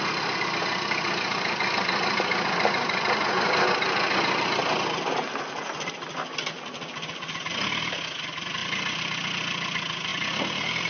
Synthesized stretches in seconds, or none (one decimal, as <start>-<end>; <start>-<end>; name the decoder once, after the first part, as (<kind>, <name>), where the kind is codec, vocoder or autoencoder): none